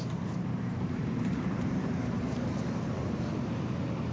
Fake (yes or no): yes